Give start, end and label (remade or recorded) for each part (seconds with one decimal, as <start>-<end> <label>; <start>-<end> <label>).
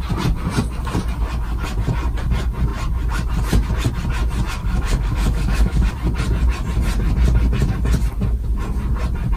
0.0-4.6 recorded; 4.6-5.9 remade; 5.9-9.4 recorded